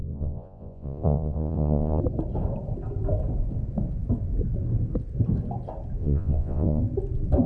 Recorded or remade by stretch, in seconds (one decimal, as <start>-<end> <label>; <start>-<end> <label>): 0.0-2.0 remade; 2.0-6.0 recorded; 6.0-6.8 remade; 6.8-7.5 recorded